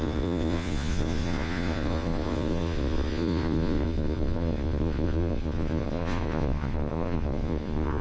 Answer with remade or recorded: remade